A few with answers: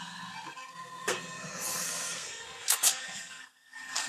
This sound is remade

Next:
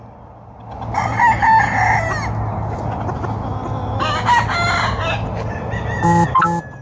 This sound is recorded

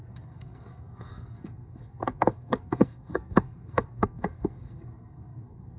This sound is remade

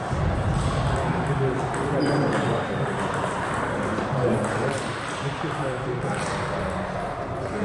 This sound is recorded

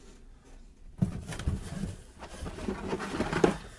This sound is recorded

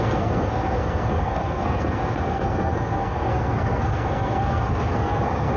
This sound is remade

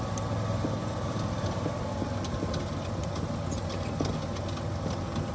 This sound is recorded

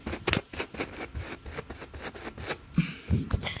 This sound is recorded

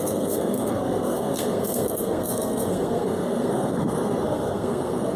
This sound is remade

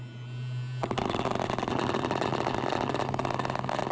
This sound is recorded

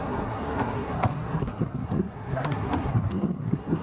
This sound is remade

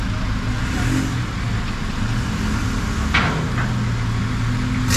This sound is recorded